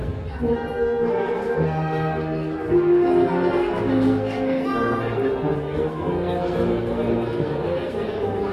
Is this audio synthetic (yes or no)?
yes